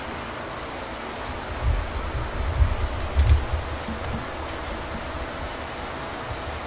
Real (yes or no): yes